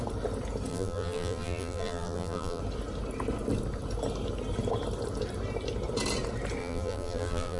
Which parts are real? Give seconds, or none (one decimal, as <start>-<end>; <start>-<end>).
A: 0.0-0.7; 2.6-6.6